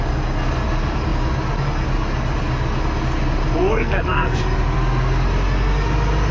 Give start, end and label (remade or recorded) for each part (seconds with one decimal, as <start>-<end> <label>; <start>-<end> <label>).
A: 0.0-3.6 recorded; 3.6-4.4 remade; 4.4-6.3 recorded